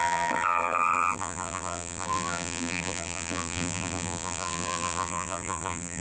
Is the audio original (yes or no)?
no